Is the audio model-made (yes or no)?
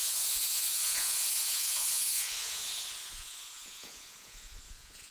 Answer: yes